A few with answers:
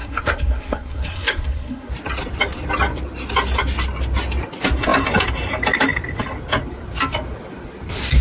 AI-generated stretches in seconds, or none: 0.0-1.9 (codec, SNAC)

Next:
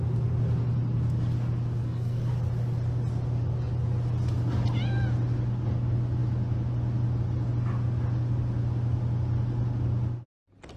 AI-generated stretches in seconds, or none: 1.8-2.3 (codec, SNAC)